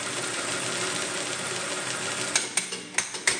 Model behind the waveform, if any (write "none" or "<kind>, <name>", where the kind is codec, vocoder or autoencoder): none